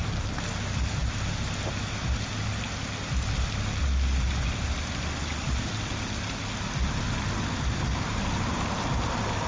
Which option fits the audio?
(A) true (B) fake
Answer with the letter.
A